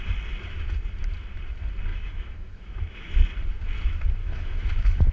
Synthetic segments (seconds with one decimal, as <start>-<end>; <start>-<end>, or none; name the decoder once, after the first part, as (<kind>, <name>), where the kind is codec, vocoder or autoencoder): 1.9-3.1 (autoencoder, DAC-VAE); 4.2-5.1